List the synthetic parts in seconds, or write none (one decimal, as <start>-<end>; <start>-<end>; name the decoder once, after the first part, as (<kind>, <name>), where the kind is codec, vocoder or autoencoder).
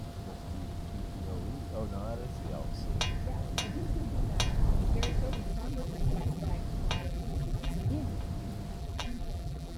5.5-6.5 (vocoder, BigVGAN v2); 7.0-7.9; 8.8-9.8